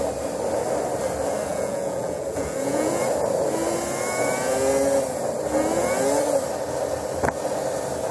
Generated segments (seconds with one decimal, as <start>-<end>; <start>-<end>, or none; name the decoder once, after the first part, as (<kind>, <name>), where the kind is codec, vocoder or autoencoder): 1.5-2.9 (vocoder, Vocos)